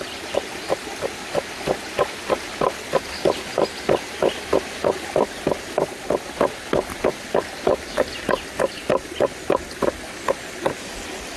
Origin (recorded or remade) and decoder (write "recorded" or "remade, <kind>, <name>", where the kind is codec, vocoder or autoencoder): recorded